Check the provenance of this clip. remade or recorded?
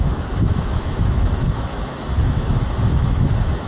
remade